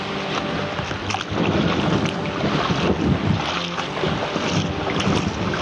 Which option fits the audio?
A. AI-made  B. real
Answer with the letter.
B